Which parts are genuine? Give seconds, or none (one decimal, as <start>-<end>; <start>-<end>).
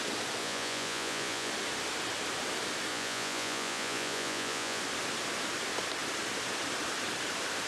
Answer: 0.0-0.4; 1.5-2.9; 4.8-7.7